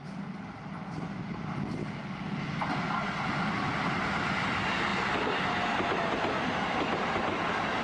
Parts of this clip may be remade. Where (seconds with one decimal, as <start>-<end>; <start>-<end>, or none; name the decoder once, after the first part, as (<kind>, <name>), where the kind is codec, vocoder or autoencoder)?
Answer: none